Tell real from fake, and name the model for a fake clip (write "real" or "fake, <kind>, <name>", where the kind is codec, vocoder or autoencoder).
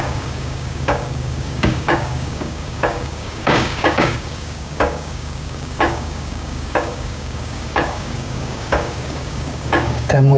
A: fake, codec, DAC